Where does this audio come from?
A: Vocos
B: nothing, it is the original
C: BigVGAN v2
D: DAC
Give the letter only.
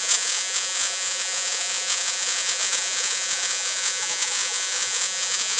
A